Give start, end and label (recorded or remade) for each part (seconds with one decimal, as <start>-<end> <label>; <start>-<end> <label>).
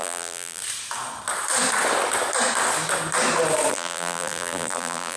0.0-0.6 remade; 0.6-3.7 recorded; 3.7-5.2 remade